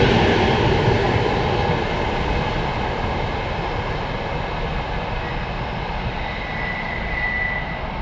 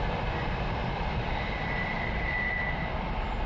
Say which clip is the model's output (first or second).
second